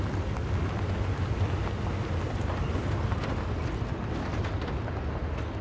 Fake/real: real